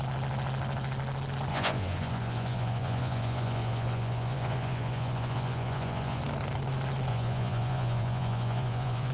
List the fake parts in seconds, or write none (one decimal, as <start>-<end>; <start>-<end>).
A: 1.5-6.2; 7.1-9.1